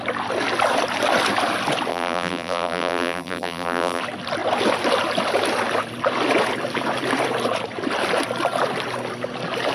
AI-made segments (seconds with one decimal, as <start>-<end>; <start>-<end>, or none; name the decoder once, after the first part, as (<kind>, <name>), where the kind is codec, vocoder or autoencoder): 1.9-4.0 (vocoder, BigVGAN v2)